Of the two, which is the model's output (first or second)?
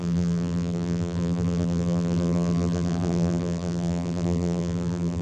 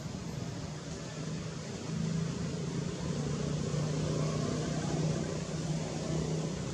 first